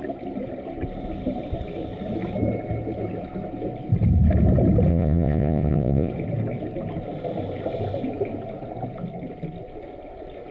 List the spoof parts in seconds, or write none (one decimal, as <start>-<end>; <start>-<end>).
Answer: 4.9-6.1